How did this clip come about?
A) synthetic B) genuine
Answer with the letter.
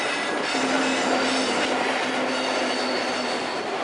B